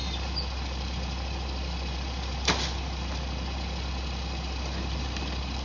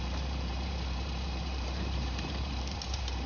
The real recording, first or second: first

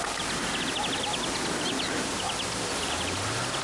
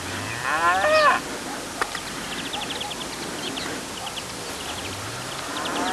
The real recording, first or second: first